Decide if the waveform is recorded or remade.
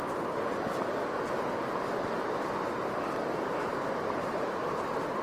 recorded